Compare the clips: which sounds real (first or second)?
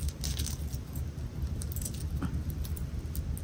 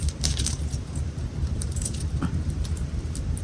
first